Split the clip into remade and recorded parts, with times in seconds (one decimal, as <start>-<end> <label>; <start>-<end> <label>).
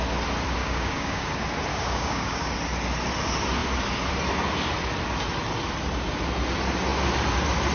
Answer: 0.0-0.6 recorded; 0.6-1.2 remade; 1.2-1.7 recorded; 1.7-2.5 remade; 2.5-7.7 recorded